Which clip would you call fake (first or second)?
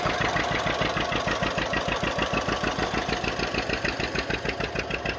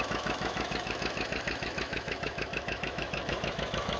second